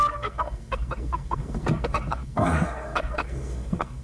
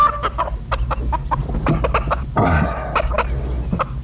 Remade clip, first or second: first